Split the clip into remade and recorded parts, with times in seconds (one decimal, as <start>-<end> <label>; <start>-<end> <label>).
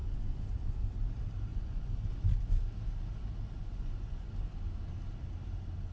0.0-0.8 remade; 0.8-1.5 recorded; 1.5-2.1 remade; 2.1-3.6 recorded; 3.6-4.3 remade; 4.3-5.9 recorded